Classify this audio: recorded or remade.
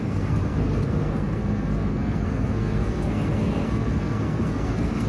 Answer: remade